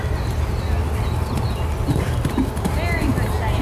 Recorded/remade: recorded